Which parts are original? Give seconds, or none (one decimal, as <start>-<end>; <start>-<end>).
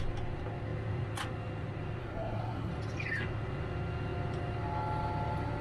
0.0-2.0; 2.7-5.6